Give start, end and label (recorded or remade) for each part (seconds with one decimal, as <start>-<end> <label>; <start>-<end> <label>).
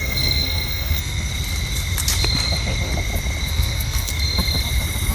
0.0-1.3 remade; 1.3-3.5 recorded; 3.5-4.1 remade; 4.1-5.1 recorded